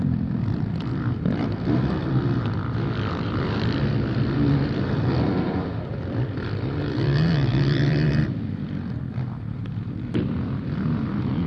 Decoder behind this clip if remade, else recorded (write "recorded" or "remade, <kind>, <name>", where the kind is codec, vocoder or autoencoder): remade, vocoder, BigVGAN v2